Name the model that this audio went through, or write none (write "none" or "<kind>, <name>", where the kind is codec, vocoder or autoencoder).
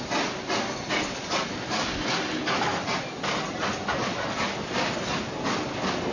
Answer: none